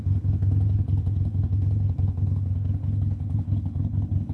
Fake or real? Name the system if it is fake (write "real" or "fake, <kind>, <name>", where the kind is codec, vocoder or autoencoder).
fake, codec, HILCodec